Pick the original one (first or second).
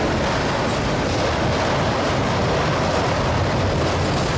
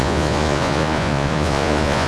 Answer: first